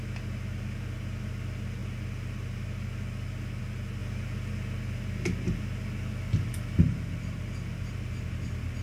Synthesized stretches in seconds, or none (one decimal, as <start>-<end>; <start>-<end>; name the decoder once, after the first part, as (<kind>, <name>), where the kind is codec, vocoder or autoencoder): none